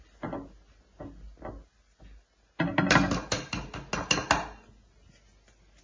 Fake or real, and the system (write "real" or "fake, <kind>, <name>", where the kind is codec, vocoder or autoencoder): real